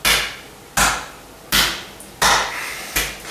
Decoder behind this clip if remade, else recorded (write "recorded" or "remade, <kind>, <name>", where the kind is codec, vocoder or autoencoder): recorded